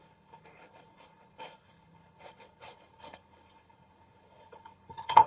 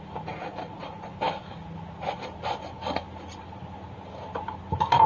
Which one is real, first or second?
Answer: second